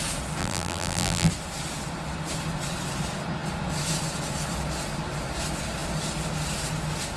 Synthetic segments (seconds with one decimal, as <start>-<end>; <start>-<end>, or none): 0.4-1.3